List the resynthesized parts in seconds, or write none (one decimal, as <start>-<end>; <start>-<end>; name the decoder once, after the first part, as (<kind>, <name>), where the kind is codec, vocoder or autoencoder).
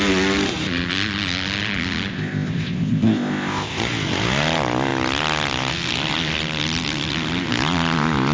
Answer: 2.1-3.8 (codec, ZipCodec)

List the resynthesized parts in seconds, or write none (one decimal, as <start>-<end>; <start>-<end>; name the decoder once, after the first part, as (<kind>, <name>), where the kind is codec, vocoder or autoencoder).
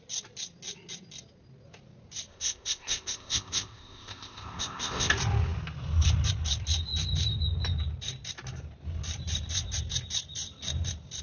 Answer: 2.3-5.1 (codec, ZipCodec)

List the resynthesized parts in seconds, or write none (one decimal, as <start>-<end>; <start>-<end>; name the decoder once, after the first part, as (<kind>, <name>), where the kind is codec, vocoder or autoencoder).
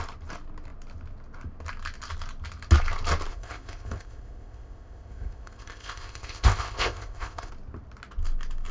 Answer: 3.3-7.5 (codec, ZipCodec)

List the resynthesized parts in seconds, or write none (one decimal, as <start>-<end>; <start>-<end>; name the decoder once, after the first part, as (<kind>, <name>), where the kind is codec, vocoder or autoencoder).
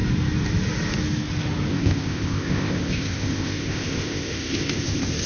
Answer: 1.7-5.3 (codec, ZipCodec)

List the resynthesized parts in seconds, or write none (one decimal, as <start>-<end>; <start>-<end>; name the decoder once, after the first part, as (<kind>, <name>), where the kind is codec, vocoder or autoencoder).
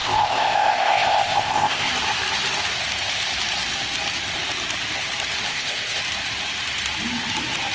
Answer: 0.0-1.9 (codec, ZipCodec); 5.5-6.0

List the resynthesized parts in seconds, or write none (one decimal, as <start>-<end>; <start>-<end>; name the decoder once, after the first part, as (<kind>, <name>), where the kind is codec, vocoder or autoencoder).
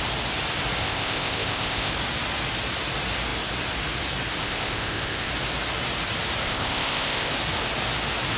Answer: 0.8-1.9 (codec, ZipCodec); 4.4-5.3; 6.4-7.3